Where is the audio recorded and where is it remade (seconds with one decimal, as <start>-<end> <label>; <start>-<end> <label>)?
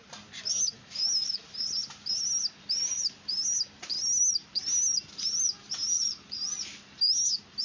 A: 0.0-0.7 recorded; 0.7-1.4 remade; 1.4-7.6 recorded